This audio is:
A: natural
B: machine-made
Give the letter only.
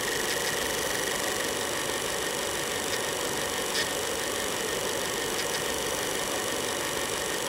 A